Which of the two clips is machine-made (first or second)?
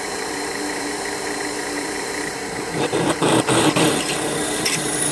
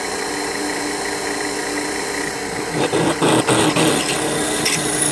first